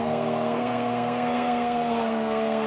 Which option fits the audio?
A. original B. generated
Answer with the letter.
B